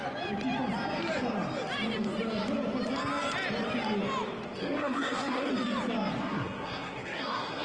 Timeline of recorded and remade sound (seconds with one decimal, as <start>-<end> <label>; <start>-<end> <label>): 0.0-4.6 recorded; 4.6-5.5 remade; 5.5-6.2 recorded; 6.2-7.6 remade